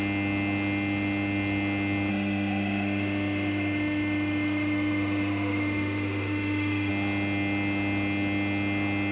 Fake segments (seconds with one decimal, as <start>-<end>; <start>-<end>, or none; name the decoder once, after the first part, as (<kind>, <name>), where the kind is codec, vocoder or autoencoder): 2.1-6.9 (autoencoder, DAC-VAE)